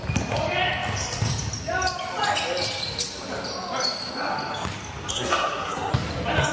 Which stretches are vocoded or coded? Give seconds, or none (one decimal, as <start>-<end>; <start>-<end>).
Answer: 5.1-5.9